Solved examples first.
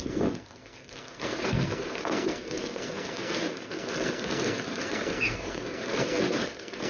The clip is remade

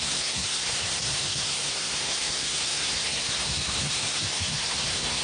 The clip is remade